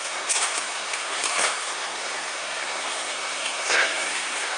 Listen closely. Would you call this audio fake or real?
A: fake